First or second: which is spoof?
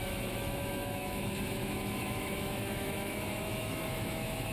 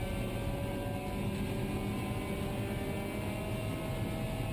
first